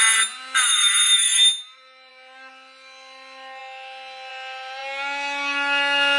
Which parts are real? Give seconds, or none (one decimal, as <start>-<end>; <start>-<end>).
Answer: 0.0-6.2